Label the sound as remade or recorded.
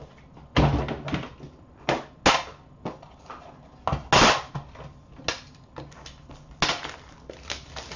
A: recorded